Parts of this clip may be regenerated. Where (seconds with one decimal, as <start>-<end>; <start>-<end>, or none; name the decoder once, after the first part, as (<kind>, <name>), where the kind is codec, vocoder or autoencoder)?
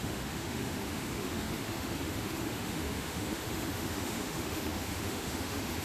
0.0-5.8 (autoencoder, DAC-VAE)